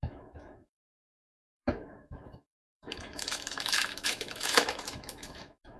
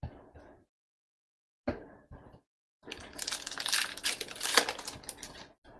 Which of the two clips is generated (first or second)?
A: first